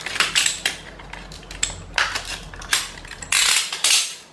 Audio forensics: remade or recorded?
recorded